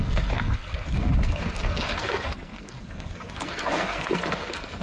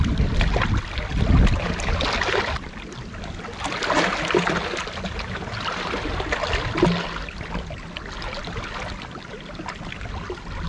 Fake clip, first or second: first